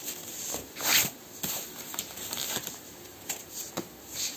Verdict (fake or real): real